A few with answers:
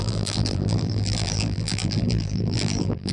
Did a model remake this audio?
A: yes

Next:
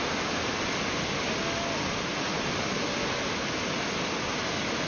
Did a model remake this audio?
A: no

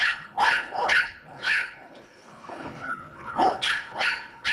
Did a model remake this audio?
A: yes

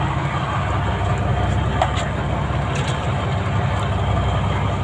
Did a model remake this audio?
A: no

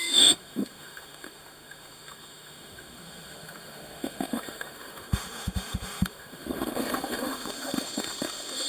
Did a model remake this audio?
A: yes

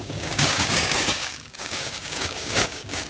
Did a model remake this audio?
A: yes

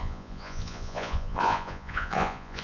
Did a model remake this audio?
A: yes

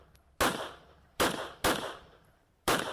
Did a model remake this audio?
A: yes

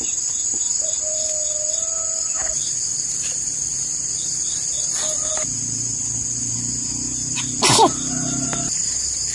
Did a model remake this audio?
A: no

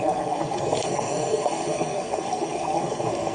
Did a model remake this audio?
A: yes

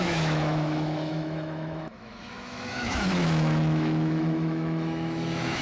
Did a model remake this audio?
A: yes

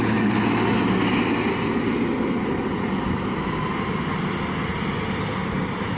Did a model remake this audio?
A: no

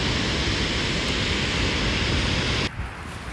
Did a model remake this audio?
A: no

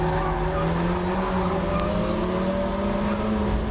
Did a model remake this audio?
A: no